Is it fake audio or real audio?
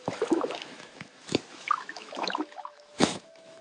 fake